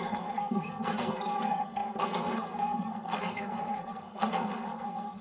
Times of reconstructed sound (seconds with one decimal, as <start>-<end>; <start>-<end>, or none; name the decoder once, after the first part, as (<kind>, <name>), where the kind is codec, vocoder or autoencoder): 0.0-5.2 (codec, SNAC)